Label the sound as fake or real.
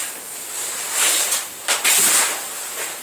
fake